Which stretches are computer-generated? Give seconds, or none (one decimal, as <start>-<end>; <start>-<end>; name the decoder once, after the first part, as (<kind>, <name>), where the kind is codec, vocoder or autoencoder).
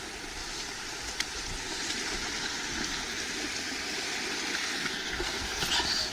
4.6-5.6 (codec, SNAC)